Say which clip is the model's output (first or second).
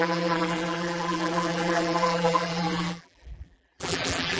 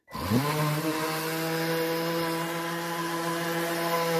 first